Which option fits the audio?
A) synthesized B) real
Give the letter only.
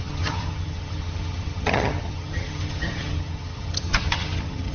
A